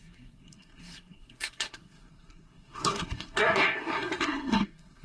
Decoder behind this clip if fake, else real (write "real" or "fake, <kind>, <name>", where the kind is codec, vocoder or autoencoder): fake, codec, SNAC